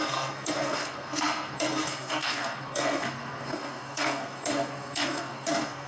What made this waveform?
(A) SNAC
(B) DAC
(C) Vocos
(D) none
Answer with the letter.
A